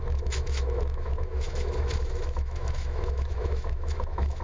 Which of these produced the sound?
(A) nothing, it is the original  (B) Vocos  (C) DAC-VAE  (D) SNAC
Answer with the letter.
C